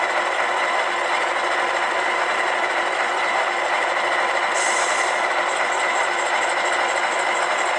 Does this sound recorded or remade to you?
recorded